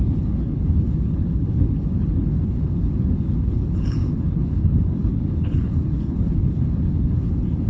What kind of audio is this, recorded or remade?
remade